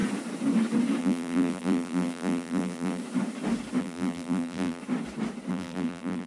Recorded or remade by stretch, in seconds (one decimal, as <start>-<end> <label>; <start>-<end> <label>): 0.0-1.0 recorded; 1.0-3.0 remade; 3.0-3.8 recorded; 3.8-4.8 remade; 4.8-5.5 recorded; 5.5-6.3 remade